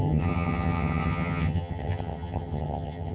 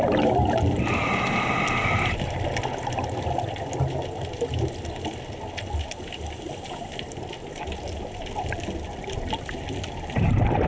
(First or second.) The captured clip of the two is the second